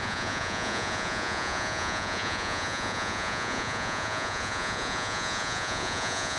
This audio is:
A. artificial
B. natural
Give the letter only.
A